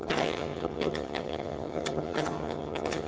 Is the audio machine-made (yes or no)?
yes